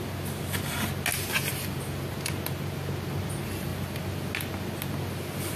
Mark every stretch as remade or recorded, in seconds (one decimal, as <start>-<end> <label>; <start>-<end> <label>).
0.0-5.6 recorded